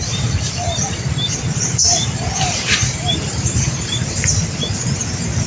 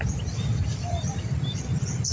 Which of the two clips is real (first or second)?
second